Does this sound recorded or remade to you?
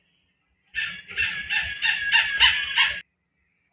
recorded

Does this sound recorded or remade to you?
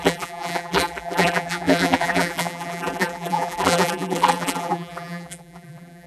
remade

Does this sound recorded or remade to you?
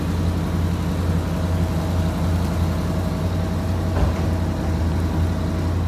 recorded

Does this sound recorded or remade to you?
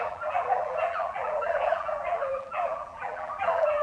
remade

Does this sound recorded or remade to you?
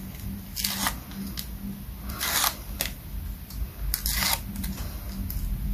recorded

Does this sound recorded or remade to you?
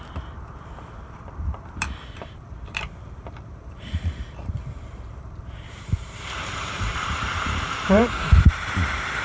remade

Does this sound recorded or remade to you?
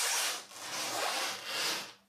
recorded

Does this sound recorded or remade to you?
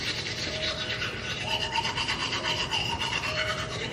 remade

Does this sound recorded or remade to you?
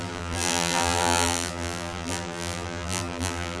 remade